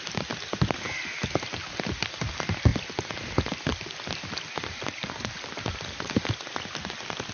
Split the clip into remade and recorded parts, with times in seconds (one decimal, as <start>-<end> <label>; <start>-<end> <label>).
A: 0.0-7.3 recorded